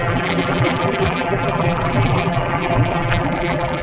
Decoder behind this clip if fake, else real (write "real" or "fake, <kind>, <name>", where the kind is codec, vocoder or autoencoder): fake, vocoder, BigVGAN v2